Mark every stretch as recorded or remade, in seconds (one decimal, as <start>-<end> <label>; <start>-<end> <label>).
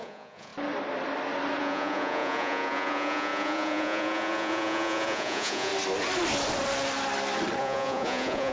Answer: 0.0-0.5 remade; 0.5-1.6 recorded; 1.6-5.7 remade; 5.7-7.6 recorded; 7.6-8.5 remade